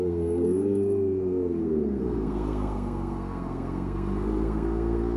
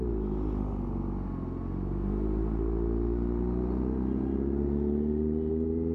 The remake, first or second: first